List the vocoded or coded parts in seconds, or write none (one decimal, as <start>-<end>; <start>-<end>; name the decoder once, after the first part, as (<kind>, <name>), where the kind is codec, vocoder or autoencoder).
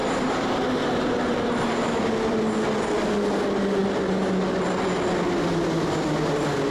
0.0-2.1 (vocoder, BigVGAN v2)